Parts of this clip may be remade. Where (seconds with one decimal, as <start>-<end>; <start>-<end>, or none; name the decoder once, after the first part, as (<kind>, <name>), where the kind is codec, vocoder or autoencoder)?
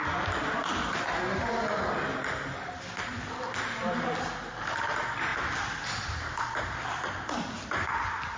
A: none